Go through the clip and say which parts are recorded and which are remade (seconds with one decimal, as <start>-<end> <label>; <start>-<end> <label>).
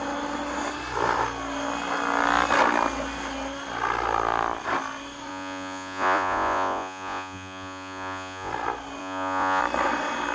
0.0-5.3 recorded; 5.3-8.5 remade; 8.5-9.0 recorded; 9.0-9.6 remade; 9.6-10.3 recorded